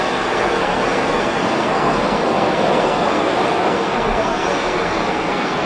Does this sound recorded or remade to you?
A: remade